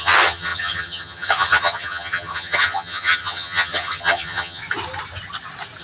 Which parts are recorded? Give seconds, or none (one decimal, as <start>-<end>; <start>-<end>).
4.6-5.8